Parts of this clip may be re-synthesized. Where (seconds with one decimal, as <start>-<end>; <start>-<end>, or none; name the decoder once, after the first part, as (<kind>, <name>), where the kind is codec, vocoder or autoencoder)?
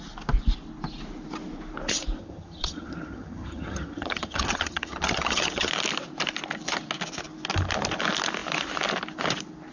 2.2-5.7 (vocoder, HiFi-GAN)